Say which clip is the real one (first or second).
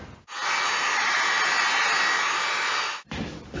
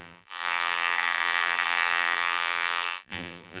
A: first